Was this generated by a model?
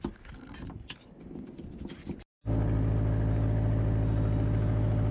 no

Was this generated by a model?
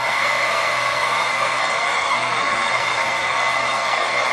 yes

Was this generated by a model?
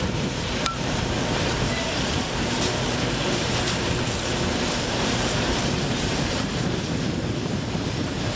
yes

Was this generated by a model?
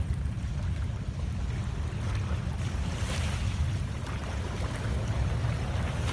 no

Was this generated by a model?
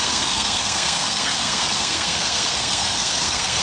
yes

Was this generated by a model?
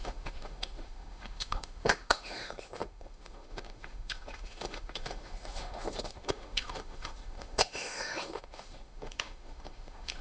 yes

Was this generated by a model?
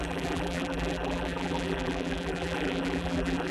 yes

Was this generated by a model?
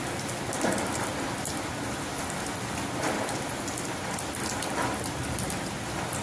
no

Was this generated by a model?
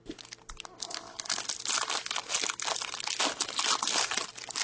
no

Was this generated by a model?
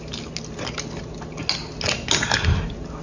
no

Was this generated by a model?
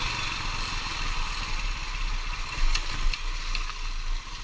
no